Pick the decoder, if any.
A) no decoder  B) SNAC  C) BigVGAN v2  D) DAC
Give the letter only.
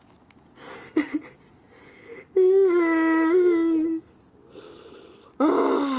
A